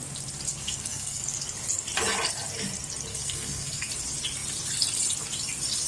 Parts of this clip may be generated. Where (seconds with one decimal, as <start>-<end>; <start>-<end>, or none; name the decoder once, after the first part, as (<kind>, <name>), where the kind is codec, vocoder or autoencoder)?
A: 0.5-1.2 (codec, SNAC); 3.1-3.9